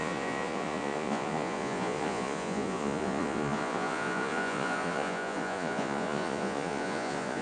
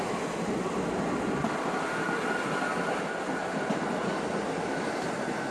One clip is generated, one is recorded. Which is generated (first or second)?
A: first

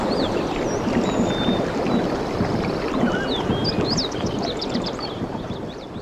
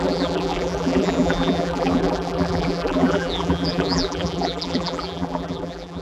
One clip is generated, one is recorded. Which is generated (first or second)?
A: second